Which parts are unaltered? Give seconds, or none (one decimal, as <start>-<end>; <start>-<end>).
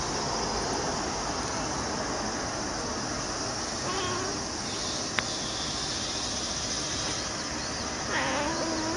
0.0-9.0